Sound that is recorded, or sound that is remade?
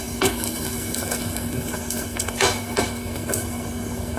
remade